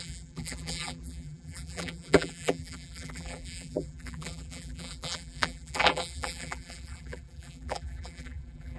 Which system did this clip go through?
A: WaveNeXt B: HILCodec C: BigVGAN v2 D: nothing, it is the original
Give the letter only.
C